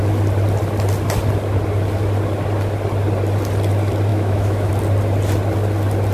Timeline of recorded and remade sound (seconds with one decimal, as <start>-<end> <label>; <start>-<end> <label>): 0.0-4.1 recorded; 4.1-4.7 remade; 4.7-6.1 recorded